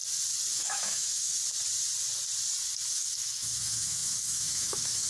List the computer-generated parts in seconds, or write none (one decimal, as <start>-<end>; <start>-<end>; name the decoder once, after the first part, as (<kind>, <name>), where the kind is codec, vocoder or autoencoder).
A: 0.5-1.4 (autoencoder, DAC-VAE); 2.9-5.1